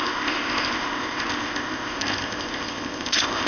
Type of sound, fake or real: fake